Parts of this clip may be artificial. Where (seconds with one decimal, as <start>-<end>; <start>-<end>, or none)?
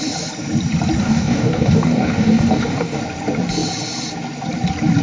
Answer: 1.0-3.0